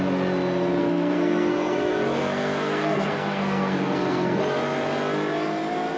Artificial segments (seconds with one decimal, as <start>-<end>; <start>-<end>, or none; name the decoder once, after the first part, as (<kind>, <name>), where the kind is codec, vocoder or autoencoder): 0.8-4.4 (codec, SNAC)